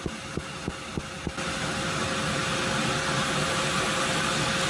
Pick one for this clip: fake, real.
real